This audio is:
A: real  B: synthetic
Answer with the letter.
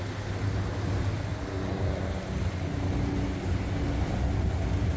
A